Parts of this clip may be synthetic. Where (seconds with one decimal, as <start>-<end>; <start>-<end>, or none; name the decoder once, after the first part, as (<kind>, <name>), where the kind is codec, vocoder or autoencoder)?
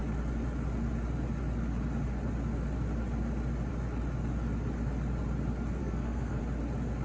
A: 5.8-6.4 (codec, SNAC)